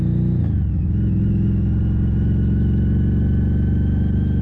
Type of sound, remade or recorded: recorded